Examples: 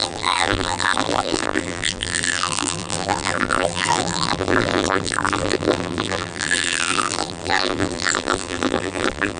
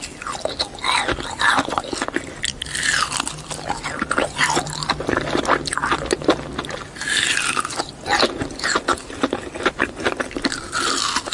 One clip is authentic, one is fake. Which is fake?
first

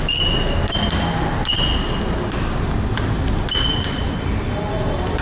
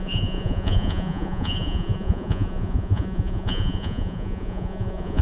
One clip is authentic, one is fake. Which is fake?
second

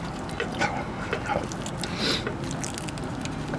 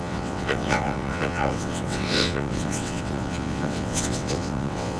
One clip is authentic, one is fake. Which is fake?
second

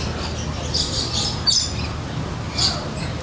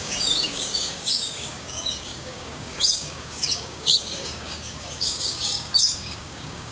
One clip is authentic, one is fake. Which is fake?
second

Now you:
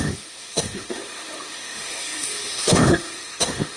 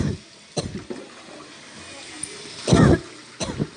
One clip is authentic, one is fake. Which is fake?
first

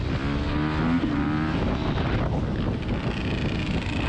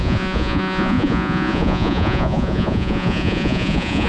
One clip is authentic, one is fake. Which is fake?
second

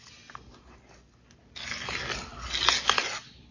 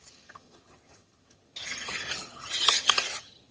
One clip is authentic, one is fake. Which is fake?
second